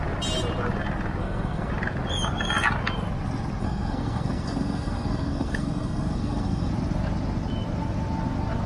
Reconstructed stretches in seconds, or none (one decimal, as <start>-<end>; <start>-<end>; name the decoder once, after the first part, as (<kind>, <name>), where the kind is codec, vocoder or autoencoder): 1.2-1.7 (codec, SNAC); 3.6-6.7